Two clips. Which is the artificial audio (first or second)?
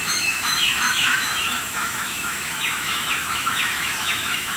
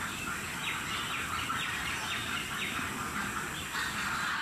first